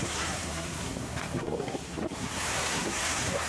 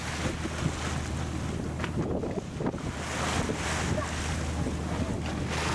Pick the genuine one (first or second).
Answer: second